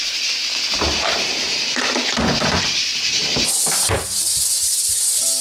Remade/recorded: recorded